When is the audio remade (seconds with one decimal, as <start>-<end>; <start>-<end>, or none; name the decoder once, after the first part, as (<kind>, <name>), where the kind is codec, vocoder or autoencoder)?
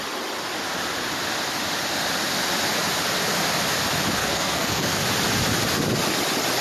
4.2-5.0 (codec, SNAC)